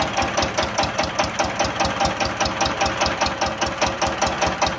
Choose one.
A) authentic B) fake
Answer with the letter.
A